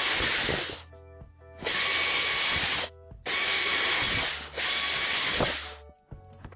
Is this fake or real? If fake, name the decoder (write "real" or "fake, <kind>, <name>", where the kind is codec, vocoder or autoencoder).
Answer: real